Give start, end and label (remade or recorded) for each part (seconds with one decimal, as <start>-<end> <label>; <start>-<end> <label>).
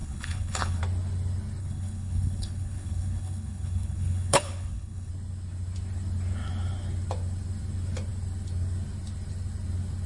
0.0-0.8 remade; 0.8-1.6 recorded; 1.6-5.1 remade; 5.1-10.1 recorded